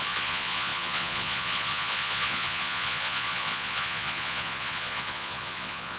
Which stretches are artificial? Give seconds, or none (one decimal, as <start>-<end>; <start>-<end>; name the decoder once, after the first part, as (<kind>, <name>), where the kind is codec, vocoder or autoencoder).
0.0-6.0 (vocoder, Vocos)

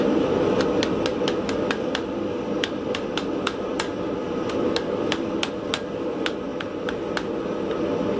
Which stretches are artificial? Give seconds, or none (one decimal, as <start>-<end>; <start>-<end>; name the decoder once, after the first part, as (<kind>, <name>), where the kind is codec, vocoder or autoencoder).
1.1-5.4 (vocoder, BigVGAN v2)

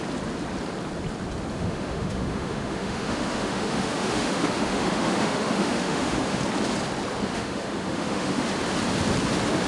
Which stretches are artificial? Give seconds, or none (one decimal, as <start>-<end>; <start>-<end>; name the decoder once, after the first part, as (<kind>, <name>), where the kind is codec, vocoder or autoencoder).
1.5-6.4 (autoencoder, DAC-VAE); 7.3-8.5

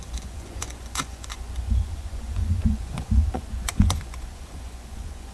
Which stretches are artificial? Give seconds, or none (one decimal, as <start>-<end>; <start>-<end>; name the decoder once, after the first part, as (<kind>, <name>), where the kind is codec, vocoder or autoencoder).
0.0-5.3 (vocoder, Vocos)

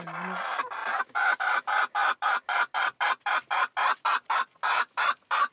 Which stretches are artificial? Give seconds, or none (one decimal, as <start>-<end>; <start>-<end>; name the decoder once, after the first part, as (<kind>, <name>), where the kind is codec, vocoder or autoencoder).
2.0-5.5 (vocoder, BigVGAN v2)

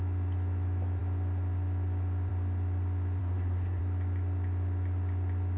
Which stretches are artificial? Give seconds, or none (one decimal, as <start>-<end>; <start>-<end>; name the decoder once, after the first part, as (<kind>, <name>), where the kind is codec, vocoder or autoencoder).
3.2-3.8 (codec, SNAC)